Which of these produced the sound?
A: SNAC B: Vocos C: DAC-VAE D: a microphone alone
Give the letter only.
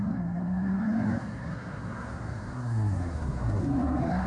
A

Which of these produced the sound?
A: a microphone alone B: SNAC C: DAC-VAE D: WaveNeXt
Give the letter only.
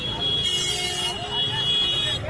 A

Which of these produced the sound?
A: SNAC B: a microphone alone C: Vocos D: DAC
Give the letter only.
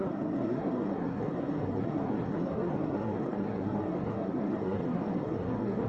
A